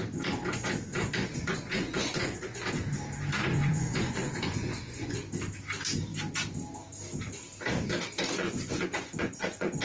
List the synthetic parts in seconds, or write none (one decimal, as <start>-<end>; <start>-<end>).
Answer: 1.2-2.7; 3.4-5.2; 8.4-9.8